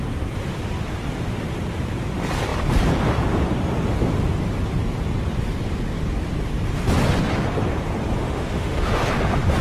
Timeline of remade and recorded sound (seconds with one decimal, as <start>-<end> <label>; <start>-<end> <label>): 0.0-8.2 recorded; 8.2-9.1 remade; 9.1-9.6 recorded